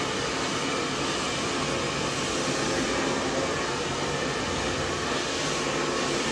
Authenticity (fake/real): real